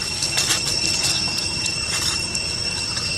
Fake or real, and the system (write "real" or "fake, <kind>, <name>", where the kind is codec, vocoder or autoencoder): real